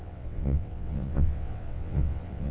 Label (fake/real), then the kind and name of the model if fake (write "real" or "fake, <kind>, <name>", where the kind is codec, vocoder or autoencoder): fake, vocoder, WaveNeXt